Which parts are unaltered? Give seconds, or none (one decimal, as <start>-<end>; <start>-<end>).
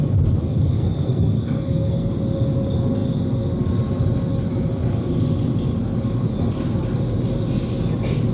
0.0-0.4; 2.1-8.3